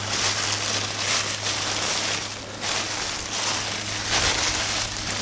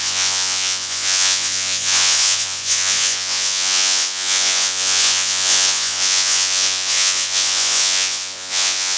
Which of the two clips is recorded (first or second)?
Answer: first